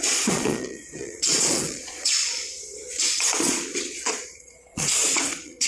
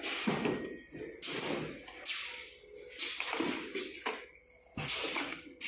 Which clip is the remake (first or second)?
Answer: first